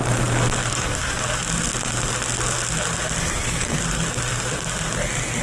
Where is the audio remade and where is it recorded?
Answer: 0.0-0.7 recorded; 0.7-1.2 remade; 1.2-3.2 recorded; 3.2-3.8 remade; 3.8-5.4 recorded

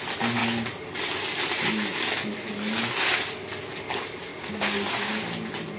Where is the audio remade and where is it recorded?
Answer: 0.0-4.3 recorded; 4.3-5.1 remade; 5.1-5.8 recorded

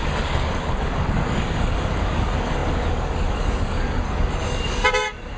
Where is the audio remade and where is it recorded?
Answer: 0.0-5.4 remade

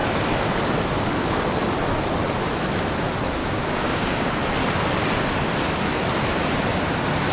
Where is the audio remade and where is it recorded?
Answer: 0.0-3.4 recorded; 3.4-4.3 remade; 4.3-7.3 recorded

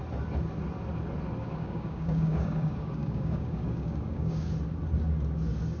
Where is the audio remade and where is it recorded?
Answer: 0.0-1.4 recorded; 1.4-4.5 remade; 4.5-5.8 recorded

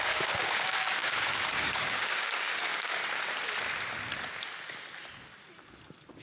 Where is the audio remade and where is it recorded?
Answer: 0.0-3.0 remade; 3.0-6.2 recorded

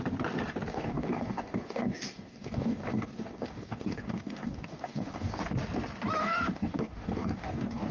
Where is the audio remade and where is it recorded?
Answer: 0.0-0.7 recorded; 0.7-5.4 remade; 5.4-6.2 recorded; 6.2-7.9 remade